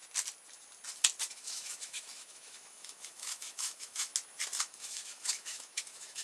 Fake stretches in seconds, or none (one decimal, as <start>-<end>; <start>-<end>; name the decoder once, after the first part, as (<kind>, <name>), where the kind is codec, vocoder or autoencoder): 1.3-4.1 (autoencoder, DAC-VAE); 4.6-6.2

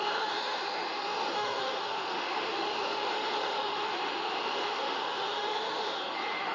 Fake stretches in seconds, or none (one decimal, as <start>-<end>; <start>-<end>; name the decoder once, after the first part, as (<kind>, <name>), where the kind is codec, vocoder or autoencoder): 0.0-6.5 (autoencoder, DAC-VAE)

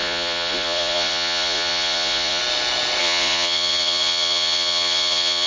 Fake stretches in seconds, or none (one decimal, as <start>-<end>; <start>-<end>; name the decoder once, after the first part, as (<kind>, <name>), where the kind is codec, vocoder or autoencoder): 0.0-2.4 (vocoder, Vocos); 3.0-5.5

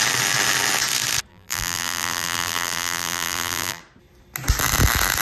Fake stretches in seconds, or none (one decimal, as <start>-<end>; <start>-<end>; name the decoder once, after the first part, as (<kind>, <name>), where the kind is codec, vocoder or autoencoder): 1.3-3.8 (vocoder, BigVGAN v2)

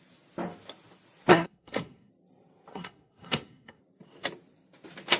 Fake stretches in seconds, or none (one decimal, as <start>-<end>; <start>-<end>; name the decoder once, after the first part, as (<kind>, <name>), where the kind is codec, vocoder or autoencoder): 1.3-2.1 (codec, SNAC); 2.7-3.8

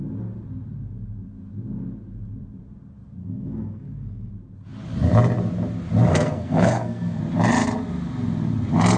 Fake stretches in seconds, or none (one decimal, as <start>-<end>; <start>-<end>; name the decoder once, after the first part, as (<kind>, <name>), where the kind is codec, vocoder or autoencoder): 3.2-4.3 (codec, SNAC); 6.1-7.2

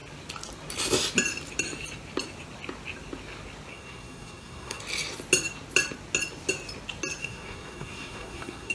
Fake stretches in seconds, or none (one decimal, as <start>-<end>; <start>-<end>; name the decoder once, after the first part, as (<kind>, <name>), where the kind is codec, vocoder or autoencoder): 3.7-4.8 (codec, SNAC); 7.2-8.7

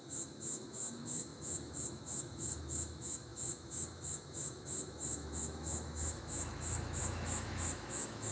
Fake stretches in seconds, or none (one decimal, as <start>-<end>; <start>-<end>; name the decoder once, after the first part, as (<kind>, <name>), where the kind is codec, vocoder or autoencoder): 0.0-8.3 (autoencoder, DAC-VAE)